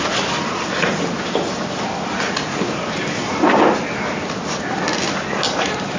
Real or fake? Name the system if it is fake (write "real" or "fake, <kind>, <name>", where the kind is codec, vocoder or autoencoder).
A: real